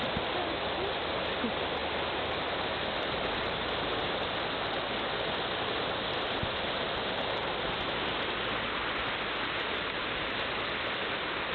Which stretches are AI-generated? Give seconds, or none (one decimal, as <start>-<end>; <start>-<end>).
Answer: none